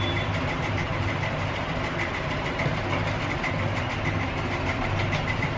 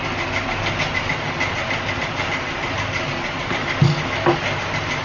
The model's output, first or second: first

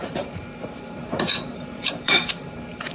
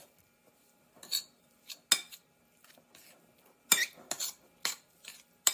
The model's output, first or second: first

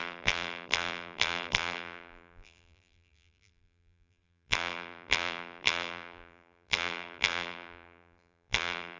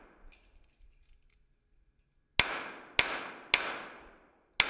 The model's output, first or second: first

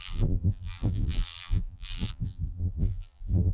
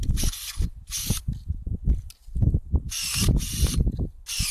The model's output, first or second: first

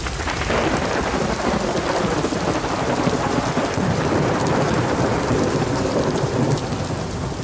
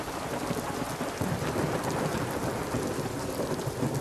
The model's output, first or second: first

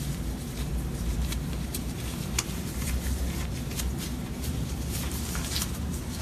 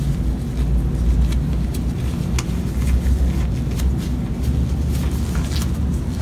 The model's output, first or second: first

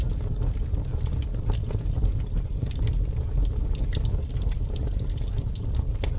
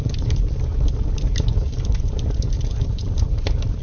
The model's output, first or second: second